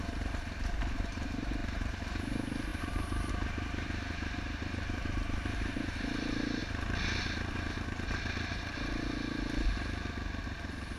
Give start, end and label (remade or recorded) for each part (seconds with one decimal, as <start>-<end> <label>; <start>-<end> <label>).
0.0-6.6 remade; 6.6-11.0 recorded